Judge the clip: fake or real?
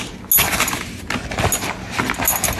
real